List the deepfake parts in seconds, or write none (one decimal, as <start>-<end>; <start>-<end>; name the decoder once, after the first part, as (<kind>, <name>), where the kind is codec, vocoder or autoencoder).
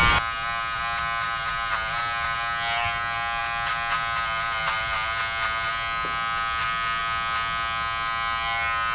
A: none